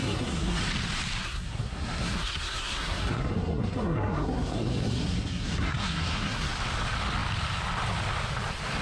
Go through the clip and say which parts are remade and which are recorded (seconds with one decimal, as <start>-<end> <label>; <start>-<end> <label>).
0.0-0.6 remade; 0.6-1.2 recorded; 1.2-6.5 remade; 6.5-8.8 recorded